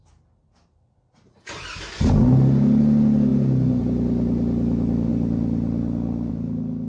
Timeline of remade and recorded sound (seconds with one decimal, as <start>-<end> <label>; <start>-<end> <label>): 0.0-6.9 recorded